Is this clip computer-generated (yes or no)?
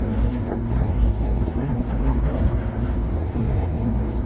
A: yes